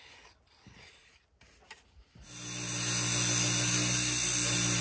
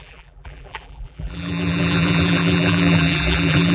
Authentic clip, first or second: first